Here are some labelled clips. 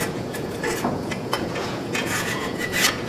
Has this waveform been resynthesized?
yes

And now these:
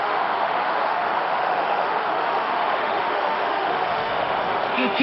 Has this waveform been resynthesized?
yes